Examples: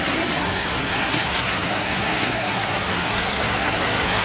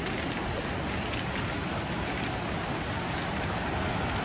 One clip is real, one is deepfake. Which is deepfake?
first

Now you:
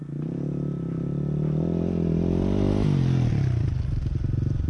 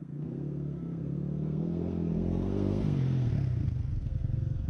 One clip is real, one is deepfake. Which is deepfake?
second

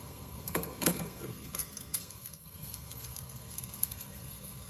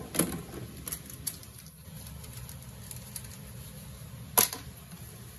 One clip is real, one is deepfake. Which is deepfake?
first